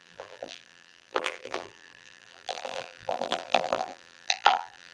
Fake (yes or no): yes